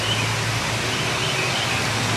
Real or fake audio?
real